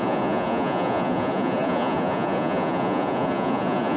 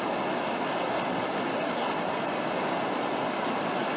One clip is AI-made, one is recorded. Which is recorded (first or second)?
second